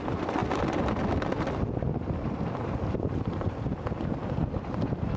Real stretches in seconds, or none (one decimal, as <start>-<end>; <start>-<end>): 0.4-1.7; 4.2-5.2